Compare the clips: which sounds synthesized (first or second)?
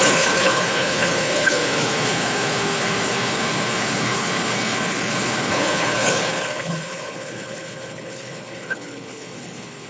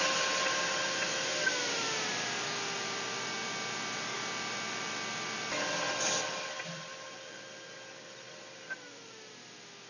first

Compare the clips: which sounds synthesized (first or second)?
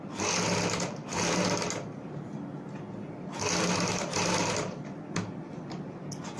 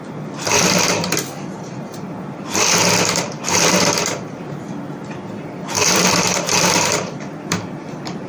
second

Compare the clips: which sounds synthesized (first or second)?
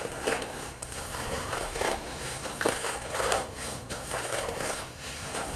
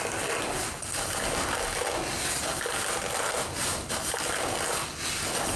first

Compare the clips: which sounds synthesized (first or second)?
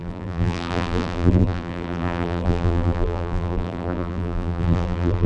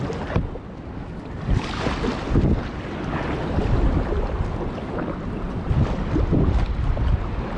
first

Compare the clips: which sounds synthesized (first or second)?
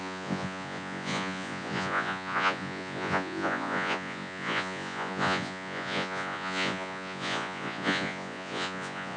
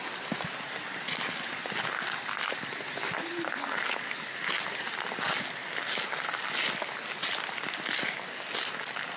first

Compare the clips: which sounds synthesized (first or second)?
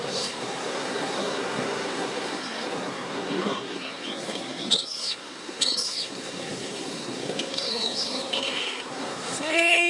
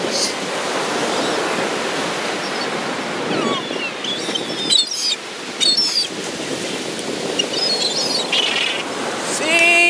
first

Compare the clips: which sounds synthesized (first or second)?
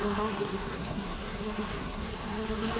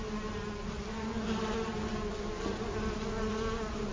first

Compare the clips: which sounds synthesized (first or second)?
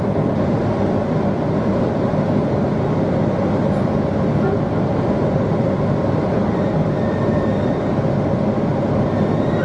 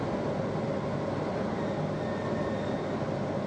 first